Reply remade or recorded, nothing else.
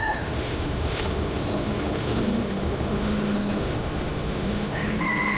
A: remade